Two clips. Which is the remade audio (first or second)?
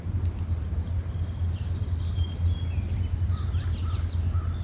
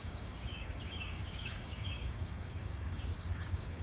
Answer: second